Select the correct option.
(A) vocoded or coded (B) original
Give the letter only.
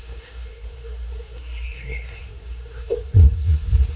A